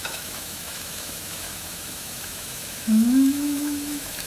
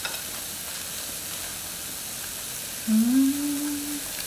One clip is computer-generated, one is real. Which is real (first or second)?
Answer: second